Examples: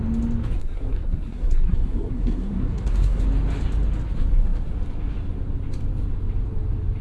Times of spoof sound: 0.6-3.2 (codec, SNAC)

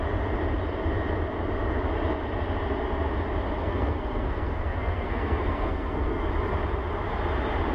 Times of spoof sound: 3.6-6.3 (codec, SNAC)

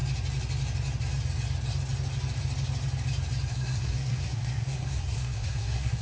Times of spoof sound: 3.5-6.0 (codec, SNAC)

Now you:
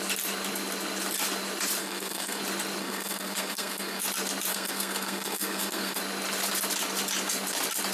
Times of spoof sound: 1.8-2.4 (codec, SNAC); 2.8-4.0; 4.5-6.0

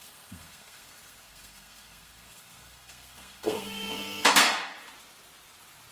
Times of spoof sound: 0.0-4.5 (codec, SNAC)